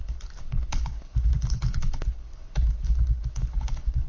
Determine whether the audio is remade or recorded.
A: remade